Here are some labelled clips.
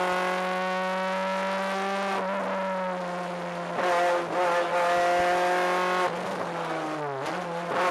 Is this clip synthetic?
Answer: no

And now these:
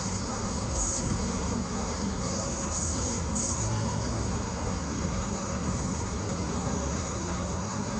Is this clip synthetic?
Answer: yes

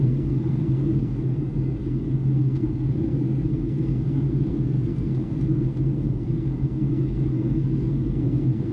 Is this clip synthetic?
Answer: yes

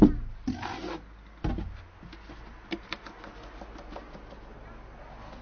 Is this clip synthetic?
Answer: no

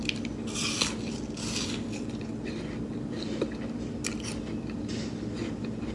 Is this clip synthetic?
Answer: no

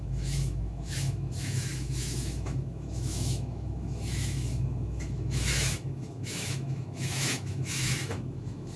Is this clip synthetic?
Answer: yes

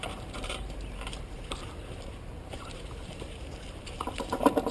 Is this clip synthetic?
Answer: yes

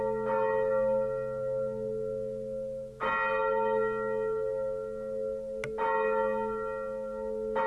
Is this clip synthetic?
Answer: no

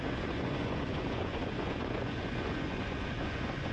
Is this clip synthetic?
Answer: yes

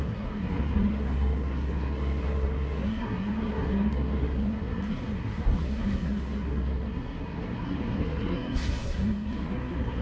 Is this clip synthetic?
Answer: yes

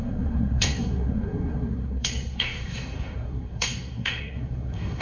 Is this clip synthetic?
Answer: yes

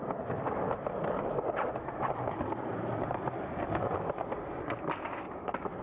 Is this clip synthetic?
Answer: no